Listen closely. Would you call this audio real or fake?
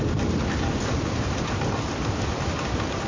real